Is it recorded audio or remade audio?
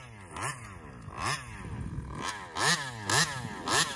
recorded